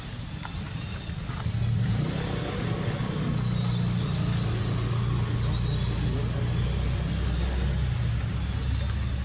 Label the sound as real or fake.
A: real